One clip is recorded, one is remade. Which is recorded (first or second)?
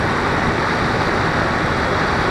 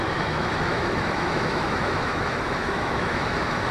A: first